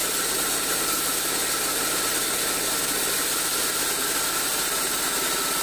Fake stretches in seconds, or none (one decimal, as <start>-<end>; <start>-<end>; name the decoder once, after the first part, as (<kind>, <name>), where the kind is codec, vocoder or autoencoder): 0.0-1.1 (vocoder, BigVGAN v2); 2.1-5.1